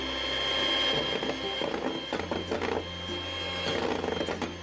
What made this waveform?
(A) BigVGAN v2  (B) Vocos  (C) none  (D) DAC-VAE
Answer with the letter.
C